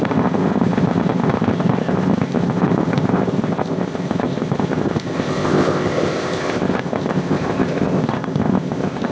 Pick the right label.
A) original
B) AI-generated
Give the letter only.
B